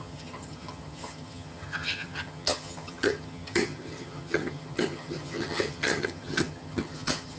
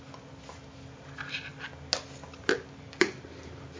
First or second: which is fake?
first